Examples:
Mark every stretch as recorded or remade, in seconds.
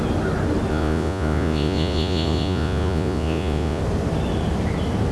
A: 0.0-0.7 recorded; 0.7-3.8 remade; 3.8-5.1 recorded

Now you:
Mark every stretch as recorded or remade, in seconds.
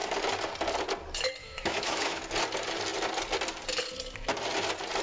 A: 0.0-1.4 recorded; 1.4-2.2 remade; 2.2-5.0 recorded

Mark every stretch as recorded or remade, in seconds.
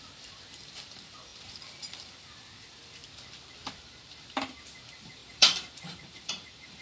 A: 0.0-3.0 remade; 3.0-3.8 recorded; 3.8-6.8 remade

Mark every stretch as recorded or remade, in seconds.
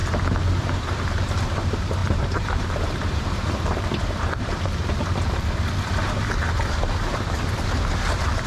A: 0.0-0.6 recorded; 0.6-8.5 remade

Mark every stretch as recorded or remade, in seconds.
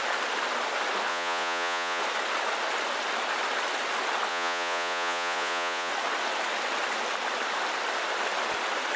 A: 0.0-1.1 recorded; 1.1-2.0 remade; 2.0-4.3 recorded; 4.3-5.9 remade; 5.9-9.0 recorded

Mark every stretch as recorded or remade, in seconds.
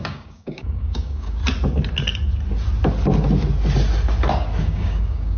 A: 0.0-1.4 remade; 1.4-4.6 recorded; 4.6-5.4 remade